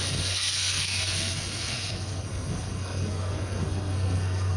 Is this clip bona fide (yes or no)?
no